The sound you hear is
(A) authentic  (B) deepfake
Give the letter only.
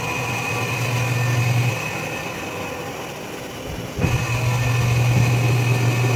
A